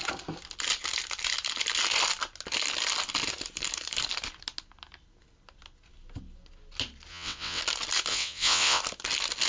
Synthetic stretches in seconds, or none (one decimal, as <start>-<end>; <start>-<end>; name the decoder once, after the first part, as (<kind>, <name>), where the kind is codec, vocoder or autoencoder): 7.1-7.6 (vocoder, WaveNeXt); 8.1-8.8